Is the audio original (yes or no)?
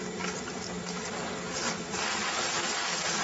yes